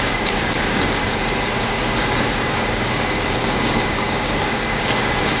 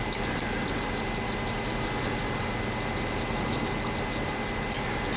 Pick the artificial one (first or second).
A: first